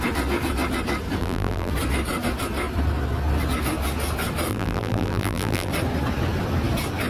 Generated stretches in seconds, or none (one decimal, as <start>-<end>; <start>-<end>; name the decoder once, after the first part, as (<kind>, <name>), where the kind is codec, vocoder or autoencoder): 1.2-1.7 (vocoder, BigVGAN v2); 4.5-5.7